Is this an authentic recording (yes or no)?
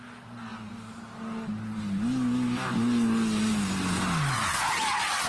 yes